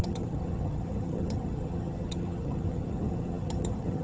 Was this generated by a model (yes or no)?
yes